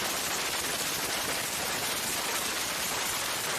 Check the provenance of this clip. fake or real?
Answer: real